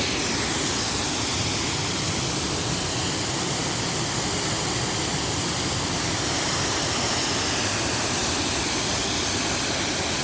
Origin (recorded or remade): recorded